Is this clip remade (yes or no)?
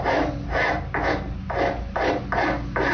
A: no